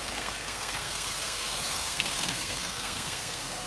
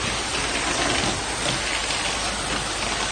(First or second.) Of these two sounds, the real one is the second